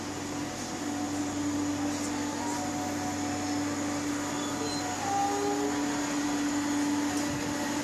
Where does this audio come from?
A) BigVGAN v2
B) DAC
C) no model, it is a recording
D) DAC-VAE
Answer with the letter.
C